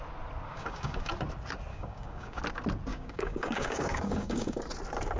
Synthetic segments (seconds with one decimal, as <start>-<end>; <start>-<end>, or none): 0.5-1.1; 1.7-2.4; 2.9-4.6